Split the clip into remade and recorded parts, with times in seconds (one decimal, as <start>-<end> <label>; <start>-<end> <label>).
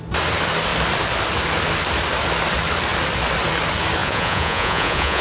0.0-4.0 recorded; 4.0-5.2 remade